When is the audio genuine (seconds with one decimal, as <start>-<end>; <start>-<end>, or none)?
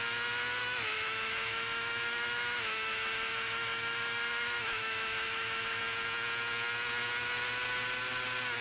0.0-0.6; 5.8-8.6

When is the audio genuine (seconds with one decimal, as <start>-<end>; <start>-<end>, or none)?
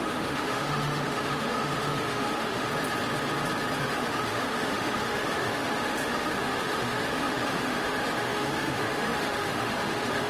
2.7-3.8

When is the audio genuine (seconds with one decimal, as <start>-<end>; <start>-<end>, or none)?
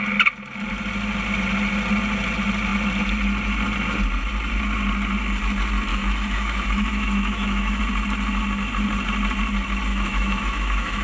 0.0-5.9; 7.8-9.9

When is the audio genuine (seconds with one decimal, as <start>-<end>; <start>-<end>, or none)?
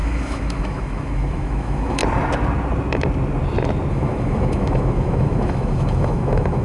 2.0-3.9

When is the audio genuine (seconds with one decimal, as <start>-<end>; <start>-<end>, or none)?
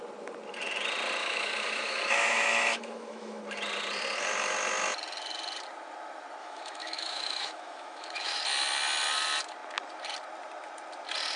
0.0-1.2; 3.4-6.4; 8.4-11.4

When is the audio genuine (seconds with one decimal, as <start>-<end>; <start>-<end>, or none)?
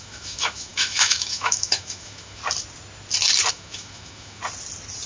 2.4-3.5; 4.4-5.1